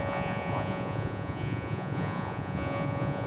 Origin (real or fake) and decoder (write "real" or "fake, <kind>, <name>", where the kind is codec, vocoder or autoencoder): fake, vocoder, Vocos